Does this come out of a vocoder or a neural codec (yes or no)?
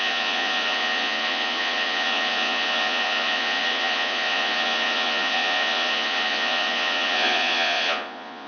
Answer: yes